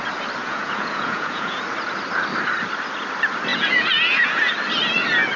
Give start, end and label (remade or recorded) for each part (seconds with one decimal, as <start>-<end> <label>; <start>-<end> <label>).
0.0-0.4 recorded; 0.4-1.6 remade; 1.6-3.5 recorded; 3.5-4.5 remade; 4.5-5.4 recorded